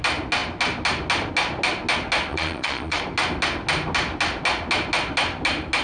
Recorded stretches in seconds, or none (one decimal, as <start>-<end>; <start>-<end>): 0.0-2.3; 3.0-5.8